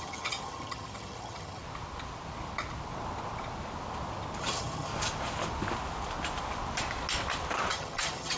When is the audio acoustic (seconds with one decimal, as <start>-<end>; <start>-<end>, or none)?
1.6-4.4; 4.9-7.7